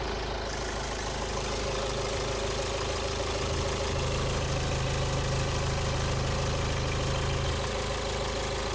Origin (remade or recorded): recorded